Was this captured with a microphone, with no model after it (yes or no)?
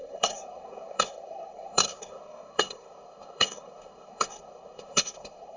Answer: no